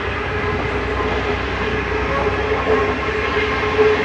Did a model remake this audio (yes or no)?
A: no